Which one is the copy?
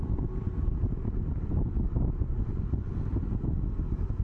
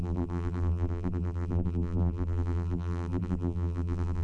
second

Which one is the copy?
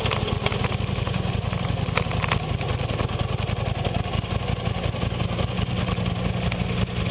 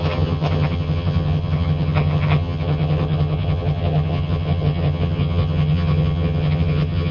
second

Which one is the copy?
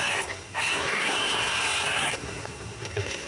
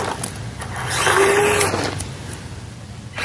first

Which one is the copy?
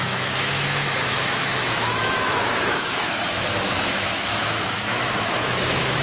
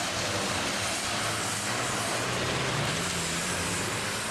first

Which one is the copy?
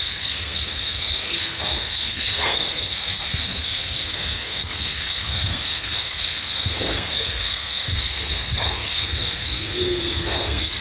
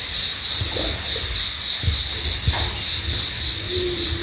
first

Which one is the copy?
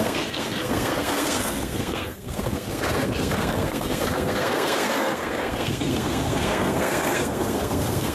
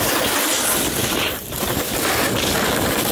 first